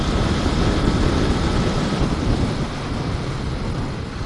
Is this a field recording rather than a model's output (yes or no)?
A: yes